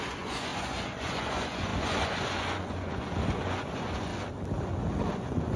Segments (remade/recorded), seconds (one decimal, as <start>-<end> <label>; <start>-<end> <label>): 0.0-4.1 remade; 4.1-5.1 recorded; 5.1-5.6 remade